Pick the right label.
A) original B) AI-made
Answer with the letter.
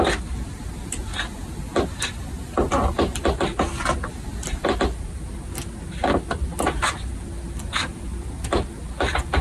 A